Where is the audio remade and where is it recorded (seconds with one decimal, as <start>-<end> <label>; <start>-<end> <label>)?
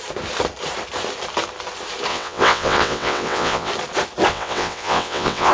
0.0-2.1 recorded; 2.1-3.7 remade; 3.7-4.3 recorded; 4.3-5.5 remade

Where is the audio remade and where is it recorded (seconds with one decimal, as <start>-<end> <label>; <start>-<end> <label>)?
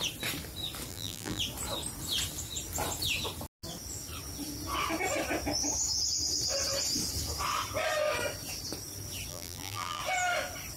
0.0-0.9 recorded; 0.9-1.4 remade; 1.4-9.3 recorded; 9.3-10.0 remade; 10.0-10.8 recorded